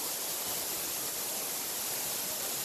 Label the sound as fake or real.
fake